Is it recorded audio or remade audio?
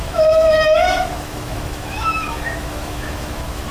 remade